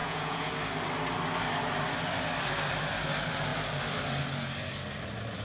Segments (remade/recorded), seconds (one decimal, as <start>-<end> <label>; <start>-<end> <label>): 0.0-0.5 remade; 0.5-5.4 recorded